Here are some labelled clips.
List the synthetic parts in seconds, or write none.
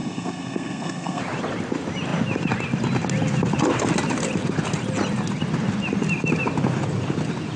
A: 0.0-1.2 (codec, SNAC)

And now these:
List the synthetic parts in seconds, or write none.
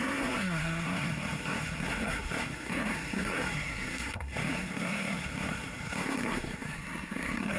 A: 0.0-7.6 (codec, SNAC)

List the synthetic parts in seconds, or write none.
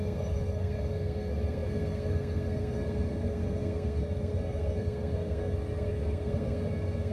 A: 0.0-7.1 (codec, SNAC)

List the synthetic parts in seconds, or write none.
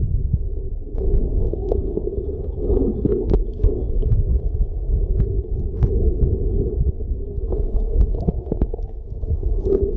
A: 0.0-4.3 (codec, SNAC); 4.9-6.1; 6.9-10.0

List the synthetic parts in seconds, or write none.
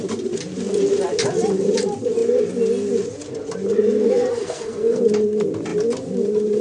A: 4.3-5.0 (codec, SNAC)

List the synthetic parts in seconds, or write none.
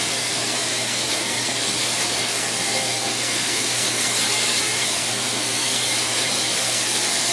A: 0.0-7.3 (codec, SNAC)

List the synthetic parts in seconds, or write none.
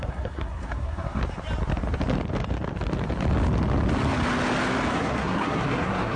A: 0.0-1.2 (codec, SNAC); 4.9-6.2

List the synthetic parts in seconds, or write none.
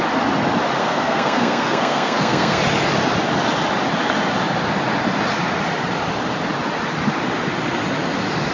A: 0.8-2.6 (codec, SNAC)